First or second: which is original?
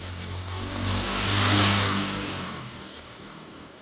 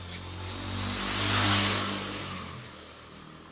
second